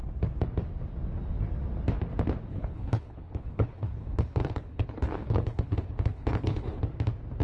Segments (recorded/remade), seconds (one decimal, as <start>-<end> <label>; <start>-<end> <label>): 0.0-2.5 recorded; 2.5-6.8 remade; 6.8-7.4 recorded